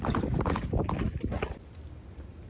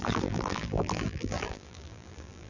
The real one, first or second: first